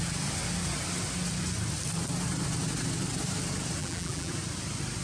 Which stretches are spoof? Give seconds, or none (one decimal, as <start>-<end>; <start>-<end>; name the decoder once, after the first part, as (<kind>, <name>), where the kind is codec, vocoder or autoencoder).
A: 3.8-4.3 (vocoder, BigVGAN v2)